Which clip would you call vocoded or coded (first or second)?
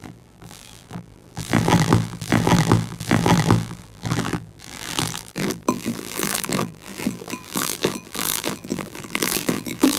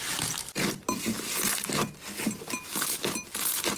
first